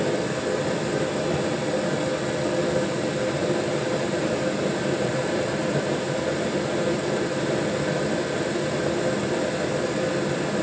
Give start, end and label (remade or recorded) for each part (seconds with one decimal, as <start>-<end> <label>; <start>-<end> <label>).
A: 0.0-3.4 recorded; 3.4-7.0 remade; 7.0-10.6 recorded